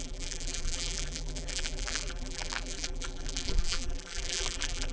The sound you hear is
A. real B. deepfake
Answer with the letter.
B